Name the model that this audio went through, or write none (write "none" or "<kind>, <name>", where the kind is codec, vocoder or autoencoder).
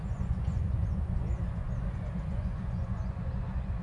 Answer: vocoder, Vocos